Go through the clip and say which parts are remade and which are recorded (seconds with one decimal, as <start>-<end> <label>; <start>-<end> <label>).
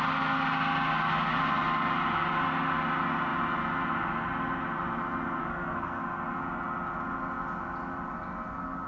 0.0-5.4 recorded; 5.4-6.0 remade; 6.0-8.9 recorded